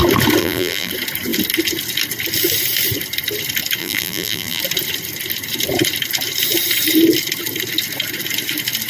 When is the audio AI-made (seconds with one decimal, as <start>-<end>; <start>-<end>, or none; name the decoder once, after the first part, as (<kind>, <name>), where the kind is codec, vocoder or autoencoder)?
0.4-0.9 (vocoder, BigVGAN v2); 3.8-4.6

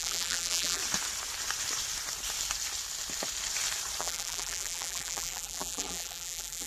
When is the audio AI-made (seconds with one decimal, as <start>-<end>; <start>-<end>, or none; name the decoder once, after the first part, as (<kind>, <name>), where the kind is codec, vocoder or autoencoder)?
0.0-0.8 (vocoder, BigVGAN v2); 4.0-6.7

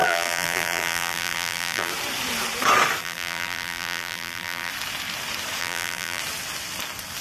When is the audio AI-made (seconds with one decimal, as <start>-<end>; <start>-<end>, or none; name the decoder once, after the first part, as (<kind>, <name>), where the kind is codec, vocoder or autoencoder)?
0.0-1.9 (vocoder, BigVGAN v2); 3.0-4.7; 5.6-6.2

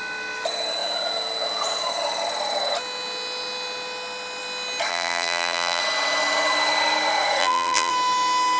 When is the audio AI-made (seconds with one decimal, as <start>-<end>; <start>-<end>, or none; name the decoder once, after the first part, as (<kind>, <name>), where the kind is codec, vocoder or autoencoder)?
4.9-5.8 (vocoder, BigVGAN v2); 7.4-7.9

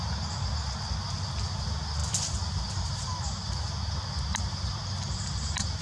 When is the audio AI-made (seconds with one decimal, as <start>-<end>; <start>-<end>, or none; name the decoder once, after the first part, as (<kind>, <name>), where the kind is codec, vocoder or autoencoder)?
2.0-5.8 (vocoder, BigVGAN v2)

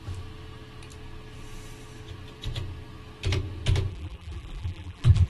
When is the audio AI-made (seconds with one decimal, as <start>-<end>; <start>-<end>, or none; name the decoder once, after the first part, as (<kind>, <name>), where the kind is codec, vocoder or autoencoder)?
3.9-5.3 (vocoder, BigVGAN v2)

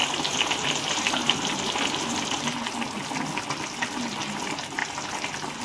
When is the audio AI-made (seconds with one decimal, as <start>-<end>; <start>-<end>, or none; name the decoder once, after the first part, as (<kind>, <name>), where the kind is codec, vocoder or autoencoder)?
none